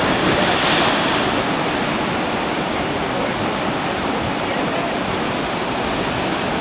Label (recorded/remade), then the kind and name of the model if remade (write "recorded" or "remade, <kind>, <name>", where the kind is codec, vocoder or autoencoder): recorded